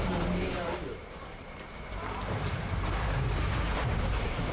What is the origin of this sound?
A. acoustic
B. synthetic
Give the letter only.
B